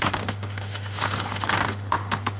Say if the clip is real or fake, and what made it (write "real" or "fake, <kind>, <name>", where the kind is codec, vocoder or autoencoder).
fake, autoencoder, DAC-VAE